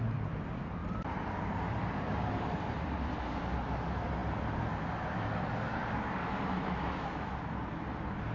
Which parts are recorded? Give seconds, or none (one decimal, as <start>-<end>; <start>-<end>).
0.0-6.2; 7.3-8.3